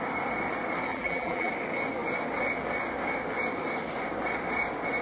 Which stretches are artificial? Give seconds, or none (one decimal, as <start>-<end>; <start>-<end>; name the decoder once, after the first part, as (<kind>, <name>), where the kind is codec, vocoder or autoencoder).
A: 0.9-1.5 (vocoder, BigVGAN v2)